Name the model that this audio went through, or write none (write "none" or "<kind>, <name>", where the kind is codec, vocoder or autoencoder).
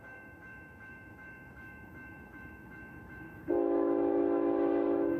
autoencoder, DAC-VAE